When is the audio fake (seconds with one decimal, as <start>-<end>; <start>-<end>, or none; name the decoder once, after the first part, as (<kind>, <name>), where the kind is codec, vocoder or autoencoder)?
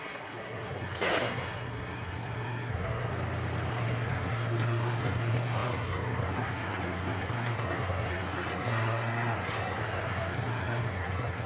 0.0-3.1 (codec, SNAC); 3.7-11.5